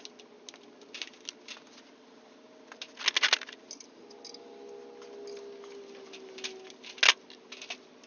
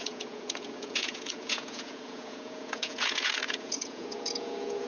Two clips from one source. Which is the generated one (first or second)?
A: second